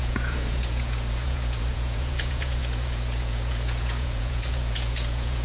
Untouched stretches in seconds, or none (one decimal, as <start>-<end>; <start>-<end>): none